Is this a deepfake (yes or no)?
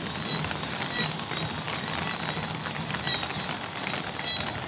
no